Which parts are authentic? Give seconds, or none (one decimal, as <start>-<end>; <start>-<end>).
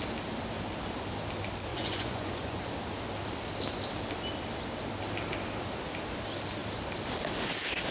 0.0-1.7; 2.6-7.9